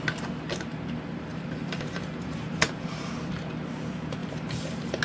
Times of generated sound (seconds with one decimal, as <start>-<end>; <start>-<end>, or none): 1.3-3.1; 4.2-5.0